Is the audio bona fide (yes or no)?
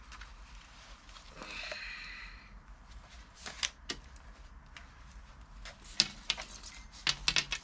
yes